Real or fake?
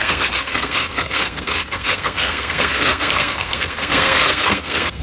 fake